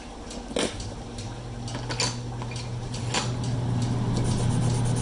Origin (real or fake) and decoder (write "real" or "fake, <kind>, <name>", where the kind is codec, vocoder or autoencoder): real